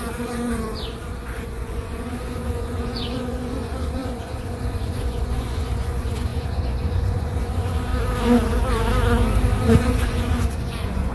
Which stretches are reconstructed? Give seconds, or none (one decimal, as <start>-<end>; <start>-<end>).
0.0-7.9; 9.8-11.1